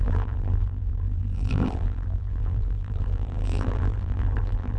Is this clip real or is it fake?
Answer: fake